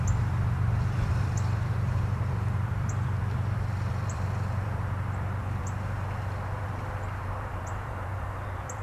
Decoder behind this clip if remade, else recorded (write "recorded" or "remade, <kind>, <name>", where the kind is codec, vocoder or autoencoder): remade, vocoder, BigVGAN v2